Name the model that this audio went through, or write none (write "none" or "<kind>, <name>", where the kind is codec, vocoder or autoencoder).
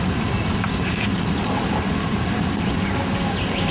none